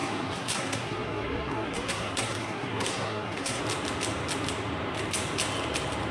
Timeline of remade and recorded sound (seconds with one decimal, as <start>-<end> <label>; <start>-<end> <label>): 0.0-3.6 remade; 3.6-6.1 recorded